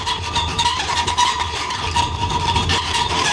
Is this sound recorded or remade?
remade